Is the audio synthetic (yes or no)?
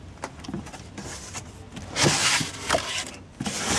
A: no